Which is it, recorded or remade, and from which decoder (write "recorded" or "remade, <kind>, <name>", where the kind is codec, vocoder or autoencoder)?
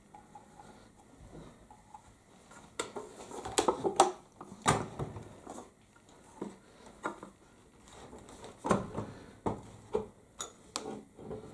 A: recorded